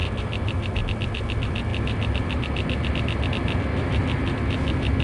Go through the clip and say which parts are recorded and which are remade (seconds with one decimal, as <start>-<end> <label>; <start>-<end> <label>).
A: 0.0-5.0 recorded